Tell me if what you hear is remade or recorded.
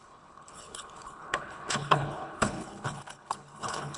remade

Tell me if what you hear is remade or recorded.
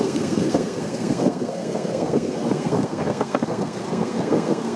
remade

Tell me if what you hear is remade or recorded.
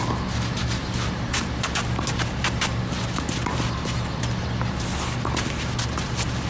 recorded